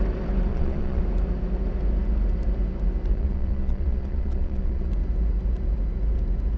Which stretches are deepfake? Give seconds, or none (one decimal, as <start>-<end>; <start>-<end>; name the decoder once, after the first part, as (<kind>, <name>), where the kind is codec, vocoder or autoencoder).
0.5-1.0 (vocoder, Vocos); 3.1-4.9